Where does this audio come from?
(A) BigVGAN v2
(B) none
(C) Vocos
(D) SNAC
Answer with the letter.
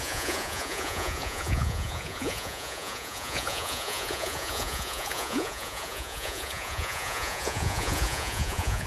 C